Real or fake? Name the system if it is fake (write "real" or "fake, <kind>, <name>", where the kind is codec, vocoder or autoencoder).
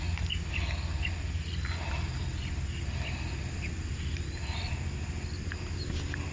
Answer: real